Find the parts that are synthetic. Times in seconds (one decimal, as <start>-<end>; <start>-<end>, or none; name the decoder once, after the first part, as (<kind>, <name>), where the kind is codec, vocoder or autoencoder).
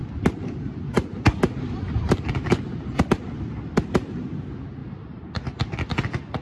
4.8-5.3 (vocoder, BigVGAN v2)